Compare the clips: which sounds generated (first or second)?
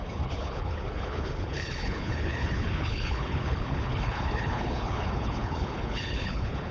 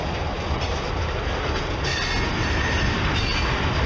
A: first